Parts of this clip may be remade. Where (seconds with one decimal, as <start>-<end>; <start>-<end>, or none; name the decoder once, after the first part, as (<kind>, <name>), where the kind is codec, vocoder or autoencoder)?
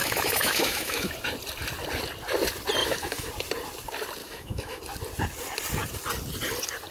0.0-1.1 (autoencoder, DAC-VAE); 2.8-3.3; 4.2-4.8